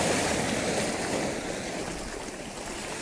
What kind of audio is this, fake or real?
real